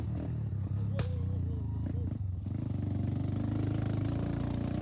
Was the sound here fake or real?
real